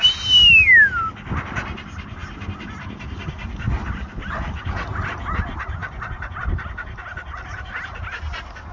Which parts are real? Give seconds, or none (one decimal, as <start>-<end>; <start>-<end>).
0.0-5.8; 6.5-8.7

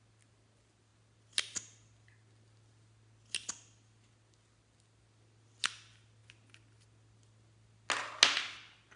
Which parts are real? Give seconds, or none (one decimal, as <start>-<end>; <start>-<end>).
0.0-9.0

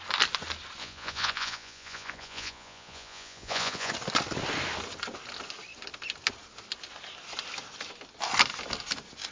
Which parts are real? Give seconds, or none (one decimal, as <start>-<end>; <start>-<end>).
0.0-0.8; 3.9-9.3

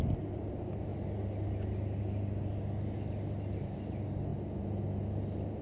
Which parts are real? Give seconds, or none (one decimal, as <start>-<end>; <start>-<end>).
0.0-5.6

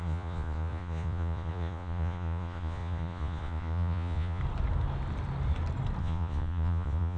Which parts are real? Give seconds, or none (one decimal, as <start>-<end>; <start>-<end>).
4.4-6.0

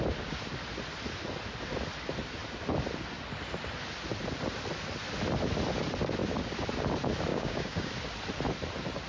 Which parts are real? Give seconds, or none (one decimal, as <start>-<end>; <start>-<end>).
0.0-7.3; 7.9-9.1

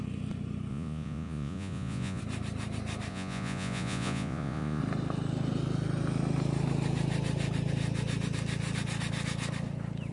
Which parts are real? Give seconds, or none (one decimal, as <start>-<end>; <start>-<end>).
0.0-0.7; 2.2-3.1; 4.8-10.1

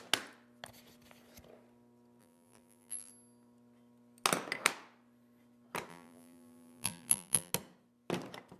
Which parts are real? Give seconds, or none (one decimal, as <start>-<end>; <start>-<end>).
0.0-2.2; 3.1-5.9; 7.5-8.6